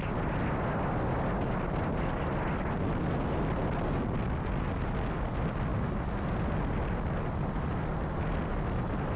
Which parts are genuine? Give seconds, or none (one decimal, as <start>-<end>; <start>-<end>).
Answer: 0.0-9.2